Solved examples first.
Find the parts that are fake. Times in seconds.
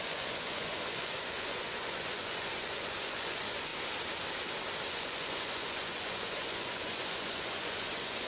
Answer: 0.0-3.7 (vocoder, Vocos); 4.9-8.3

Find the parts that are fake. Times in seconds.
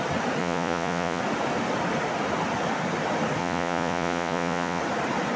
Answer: 0.4-1.2 (vocoder, Vocos); 3.4-4.8